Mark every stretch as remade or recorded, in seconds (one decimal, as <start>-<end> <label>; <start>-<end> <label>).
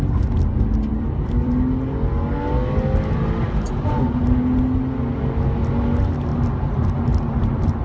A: 0.0-0.9 recorded; 0.9-1.5 remade; 1.5-7.8 recorded